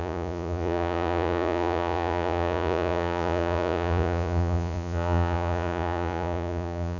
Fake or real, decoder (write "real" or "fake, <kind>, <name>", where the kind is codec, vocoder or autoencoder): fake, vocoder, Vocos